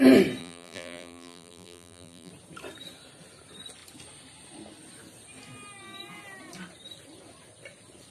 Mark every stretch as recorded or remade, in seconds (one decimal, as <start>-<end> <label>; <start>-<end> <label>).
0.0-0.4 recorded; 0.4-2.3 remade; 2.3-8.1 recorded